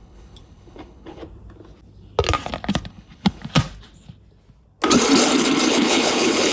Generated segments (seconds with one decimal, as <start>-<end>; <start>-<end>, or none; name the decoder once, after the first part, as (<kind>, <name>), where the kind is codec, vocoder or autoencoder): 0.0-1.2 (codec, HILCodec); 2.9-3.4; 5.7-6.5